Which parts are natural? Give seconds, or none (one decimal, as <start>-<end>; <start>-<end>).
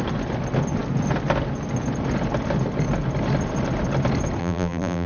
0.0-4.4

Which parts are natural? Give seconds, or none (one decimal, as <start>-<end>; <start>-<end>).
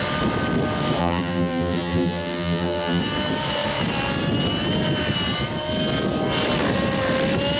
0.0-1.0; 3.0-7.6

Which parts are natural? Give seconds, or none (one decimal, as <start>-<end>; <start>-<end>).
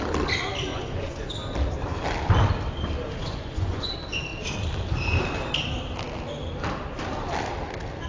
0.0-0.7; 1.3-3.2; 3.9-8.1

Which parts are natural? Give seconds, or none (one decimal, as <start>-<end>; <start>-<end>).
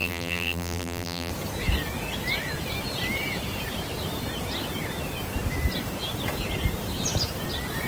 1.3-7.9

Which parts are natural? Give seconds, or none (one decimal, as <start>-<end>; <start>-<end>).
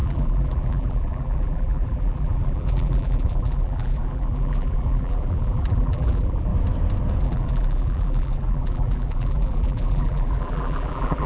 6.5-7.2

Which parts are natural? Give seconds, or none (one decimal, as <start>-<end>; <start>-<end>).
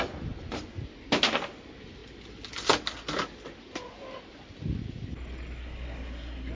0.0-5.6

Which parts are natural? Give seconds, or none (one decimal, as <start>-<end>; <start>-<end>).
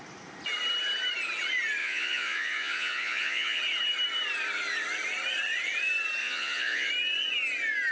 0.0-1.8; 3.6-6.2; 6.9-7.9